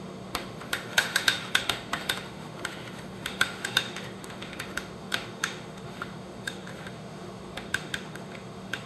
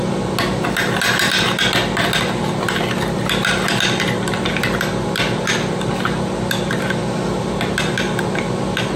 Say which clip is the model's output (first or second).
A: first